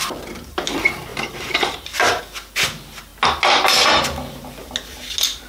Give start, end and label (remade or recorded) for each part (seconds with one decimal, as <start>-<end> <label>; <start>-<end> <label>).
0.0-1.1 recorded; 1.1-2.2 remade; 2.2-5.5 recorded